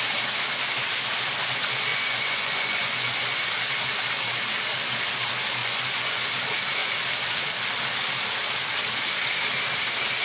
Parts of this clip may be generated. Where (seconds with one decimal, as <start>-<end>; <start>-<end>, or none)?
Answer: 1.9-3.5; 5.6-6.3